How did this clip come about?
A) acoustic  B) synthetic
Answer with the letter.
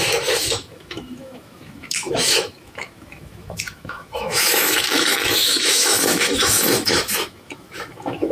B